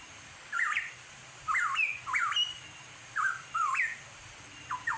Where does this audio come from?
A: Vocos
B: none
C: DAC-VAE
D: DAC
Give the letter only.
B